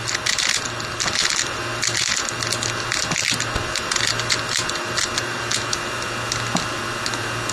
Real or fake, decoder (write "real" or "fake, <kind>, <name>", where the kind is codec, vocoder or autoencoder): real